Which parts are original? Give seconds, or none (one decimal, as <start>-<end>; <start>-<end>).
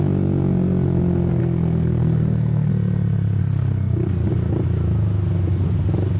0.0-1.4; 2.7-3.4; 4.3-6.2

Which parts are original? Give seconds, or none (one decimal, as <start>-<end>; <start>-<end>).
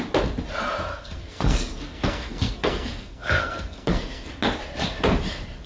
0.0-0.9; 4.3-5.7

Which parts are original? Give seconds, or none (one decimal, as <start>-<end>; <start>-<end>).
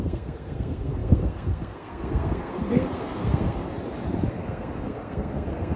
3.7-4.3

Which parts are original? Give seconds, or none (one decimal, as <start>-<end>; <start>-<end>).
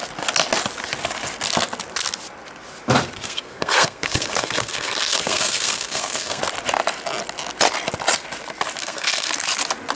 0.0-3.2; 6.4-8.8; 9.3-9.9